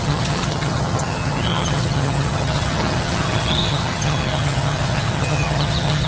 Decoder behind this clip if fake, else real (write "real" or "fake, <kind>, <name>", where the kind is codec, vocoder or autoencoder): fake, vocoder, HiFi-GAN